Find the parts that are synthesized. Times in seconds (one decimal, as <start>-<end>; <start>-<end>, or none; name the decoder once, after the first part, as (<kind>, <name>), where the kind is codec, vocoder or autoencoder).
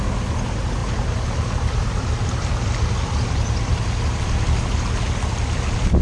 0.8-4.4 (vocoder, BigVGAN v2)